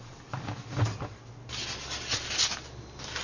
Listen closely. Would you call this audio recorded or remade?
recorded